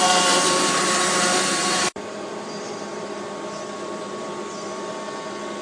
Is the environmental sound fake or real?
fake